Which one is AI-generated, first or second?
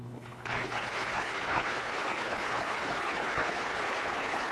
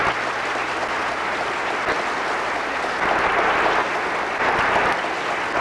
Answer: first